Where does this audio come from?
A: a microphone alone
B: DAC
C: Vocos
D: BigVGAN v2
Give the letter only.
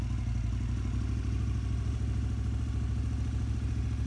A